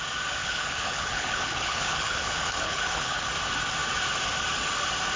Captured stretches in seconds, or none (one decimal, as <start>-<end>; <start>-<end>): 0.0-0.4; 3.3-5.2